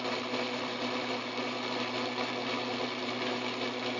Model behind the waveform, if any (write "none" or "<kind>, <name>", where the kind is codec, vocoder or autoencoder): none